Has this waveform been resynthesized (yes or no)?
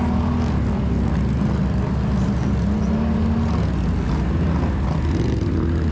no